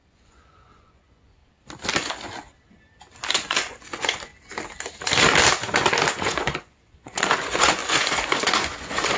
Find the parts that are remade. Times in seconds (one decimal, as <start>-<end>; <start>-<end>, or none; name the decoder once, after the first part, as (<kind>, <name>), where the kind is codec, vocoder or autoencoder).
0.0-1.4 (vocoder, Vocos); 3.3-4.3; 6.1-9.2